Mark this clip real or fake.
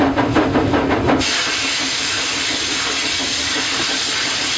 real